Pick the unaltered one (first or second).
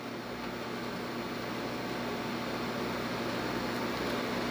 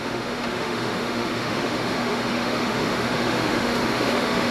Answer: first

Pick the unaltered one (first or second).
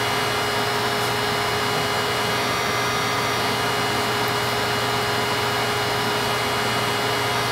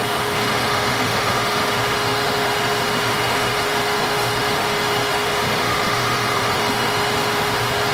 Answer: first